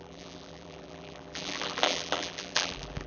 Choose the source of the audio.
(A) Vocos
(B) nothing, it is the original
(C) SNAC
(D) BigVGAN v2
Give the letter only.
D